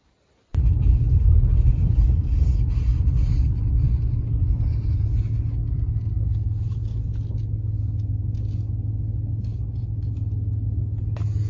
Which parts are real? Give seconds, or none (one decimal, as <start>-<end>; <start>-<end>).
0.0-9.5; 10.1-11.5